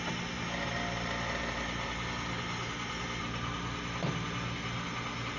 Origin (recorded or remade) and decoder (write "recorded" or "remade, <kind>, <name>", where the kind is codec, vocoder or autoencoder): recorded